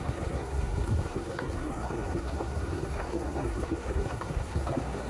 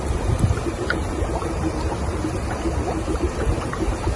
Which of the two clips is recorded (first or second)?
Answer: second